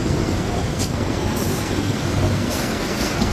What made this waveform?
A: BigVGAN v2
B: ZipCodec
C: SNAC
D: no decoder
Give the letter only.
C